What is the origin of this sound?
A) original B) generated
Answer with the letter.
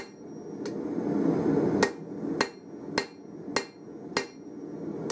A